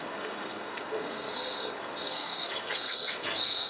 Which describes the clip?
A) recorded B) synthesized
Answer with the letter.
B